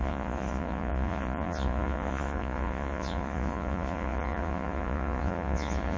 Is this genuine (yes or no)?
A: no